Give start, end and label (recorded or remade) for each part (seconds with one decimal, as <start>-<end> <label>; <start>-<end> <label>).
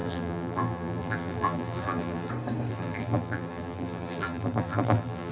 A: 0.0-2.3 remade; 2.3-2.7 recorded; 2.7-5.3 remade